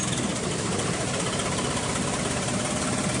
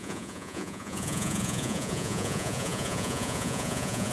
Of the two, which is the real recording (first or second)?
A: first